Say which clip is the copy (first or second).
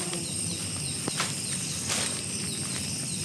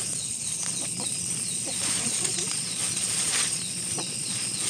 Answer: second